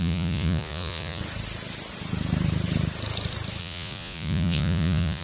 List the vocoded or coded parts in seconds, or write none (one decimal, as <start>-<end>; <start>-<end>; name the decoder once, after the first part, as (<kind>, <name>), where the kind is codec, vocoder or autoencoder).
0.0-1.2 (vocoder, Vocos); 3.6-5.2